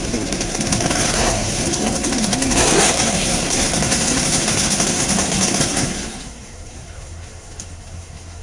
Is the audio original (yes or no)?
no